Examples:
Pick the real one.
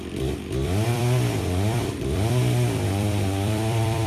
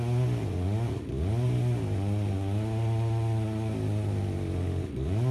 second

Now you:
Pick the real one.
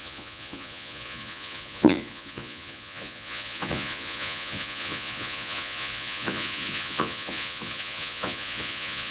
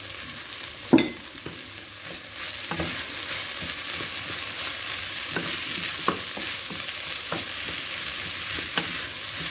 second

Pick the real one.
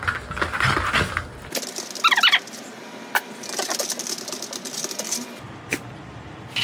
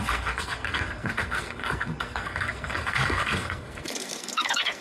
first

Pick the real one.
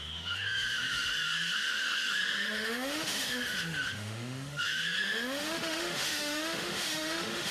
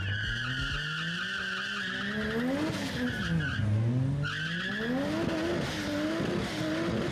second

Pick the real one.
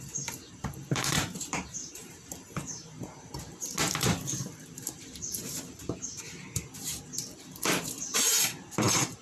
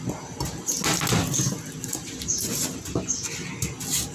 second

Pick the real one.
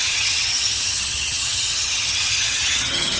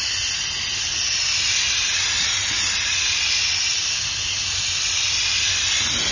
second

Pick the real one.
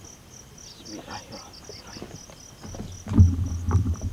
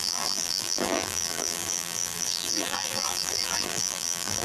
first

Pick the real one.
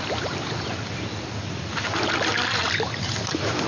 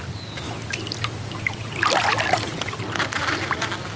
second